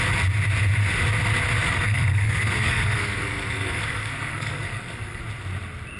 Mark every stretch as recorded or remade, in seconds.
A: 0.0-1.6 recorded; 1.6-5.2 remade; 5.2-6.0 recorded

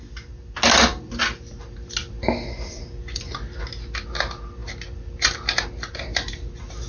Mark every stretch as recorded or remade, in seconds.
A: 0.0-6.9 recorded

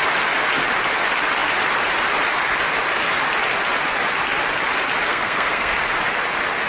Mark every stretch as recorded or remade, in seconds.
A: 0.0-5.1 recorded; 5.1-5.7 remade; 5.7-6.7 recorded

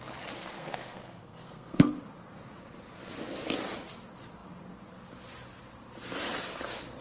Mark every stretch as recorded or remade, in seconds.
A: 0.0-0.4 recorded; 0.4-2.0 remade; 2.0-7.0 recorded

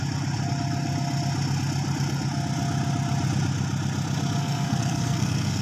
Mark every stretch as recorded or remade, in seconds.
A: 0.0-4.4 recorded; 4.4-5.6 remade

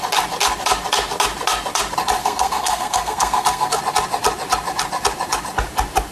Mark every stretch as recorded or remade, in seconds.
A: 0.0-2.2 recorded; 2.2-3.8 remade; 3.8-6.1 recorded

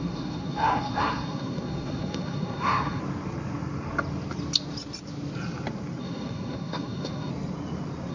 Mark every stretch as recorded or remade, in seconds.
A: 0.0-3.0 remade; 3.0-6.0 recorded; 6.0-7.3 remade; 7.3-8.1 recorded